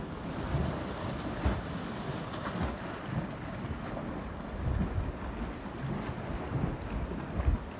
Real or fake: real